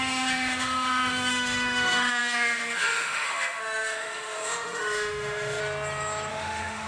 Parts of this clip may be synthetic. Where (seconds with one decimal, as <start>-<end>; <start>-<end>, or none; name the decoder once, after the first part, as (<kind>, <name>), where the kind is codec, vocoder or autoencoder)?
0.0-5.6 (autoencoder, DAC-VAE); 6.3-6.9